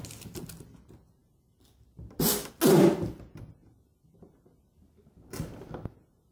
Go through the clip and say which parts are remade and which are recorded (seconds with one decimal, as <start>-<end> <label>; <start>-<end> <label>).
0.0-6.3 recorded